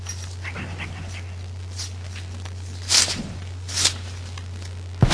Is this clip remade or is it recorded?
recorded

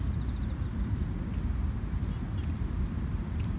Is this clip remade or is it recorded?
recorded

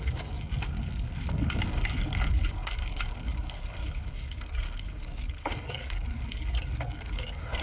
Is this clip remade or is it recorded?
remade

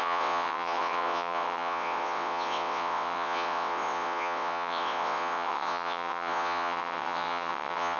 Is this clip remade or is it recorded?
remade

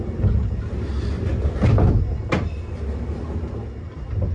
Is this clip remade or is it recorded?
recorded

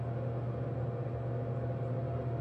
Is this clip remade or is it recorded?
recorded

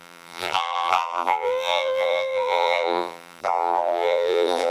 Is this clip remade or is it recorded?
remade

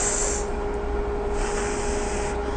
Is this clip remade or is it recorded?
recorded